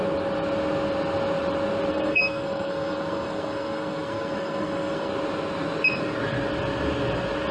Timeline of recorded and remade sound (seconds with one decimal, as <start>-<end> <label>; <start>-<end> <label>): 0.0-1.9 recorded; 1.9-5.1 remade; 5.1-7.5 recorded